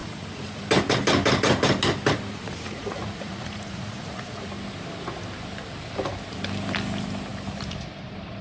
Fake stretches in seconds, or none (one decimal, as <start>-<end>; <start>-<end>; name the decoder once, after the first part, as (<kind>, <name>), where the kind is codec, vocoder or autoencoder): 0.0-0.6 (vocoder, Vocos); 2.3-4.5